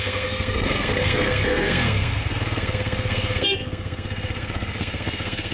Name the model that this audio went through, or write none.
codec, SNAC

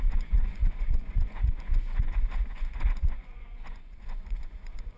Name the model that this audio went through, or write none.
vocoder, Vocos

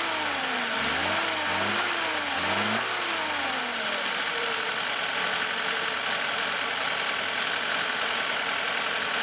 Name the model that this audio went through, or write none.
none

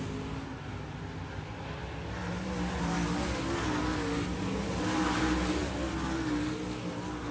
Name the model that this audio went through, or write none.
none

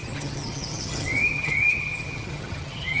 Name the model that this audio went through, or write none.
vocoder, HiFi-GAN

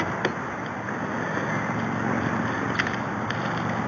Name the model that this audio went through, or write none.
none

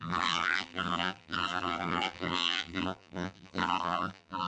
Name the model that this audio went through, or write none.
vocoder, BigVGAN v2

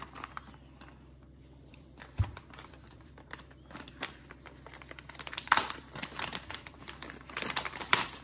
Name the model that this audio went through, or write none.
vocoder, BigVGAN v2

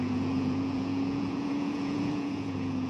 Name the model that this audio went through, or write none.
vocoder, Vocos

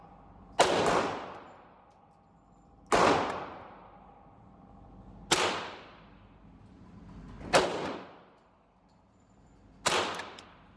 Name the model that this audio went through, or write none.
none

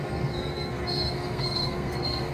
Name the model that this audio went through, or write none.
codec, SNAC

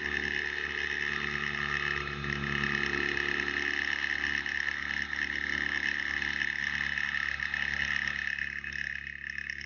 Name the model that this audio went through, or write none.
none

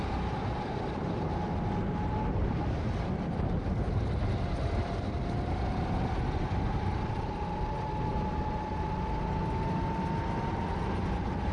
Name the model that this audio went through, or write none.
none